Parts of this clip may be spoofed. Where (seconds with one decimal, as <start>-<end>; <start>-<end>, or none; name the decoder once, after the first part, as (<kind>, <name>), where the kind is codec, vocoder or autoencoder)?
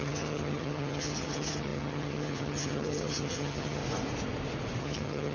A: 0.0-3.8 (vocoder, HiFi-GAN); 4.8-5.3